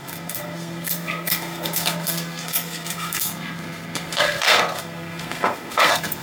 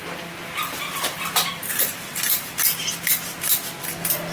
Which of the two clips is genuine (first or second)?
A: second